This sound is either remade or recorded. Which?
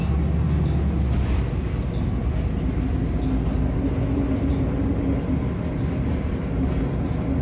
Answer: recorded